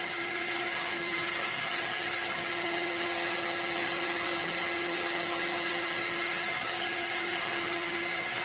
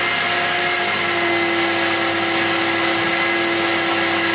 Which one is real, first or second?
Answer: second